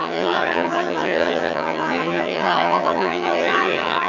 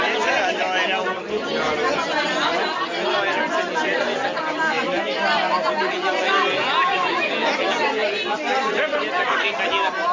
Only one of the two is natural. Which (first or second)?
second